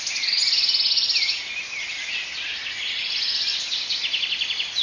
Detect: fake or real real